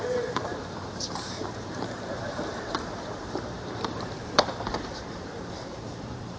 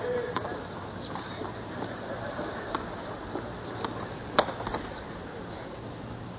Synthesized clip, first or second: first